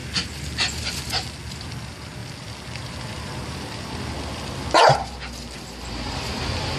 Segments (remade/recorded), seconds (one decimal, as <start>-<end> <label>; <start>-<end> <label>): 0.0-2.2 recorded; 2.2-6.3 remade; 6.3-6.8 recorded